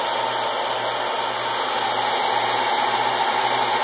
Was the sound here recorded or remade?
recorded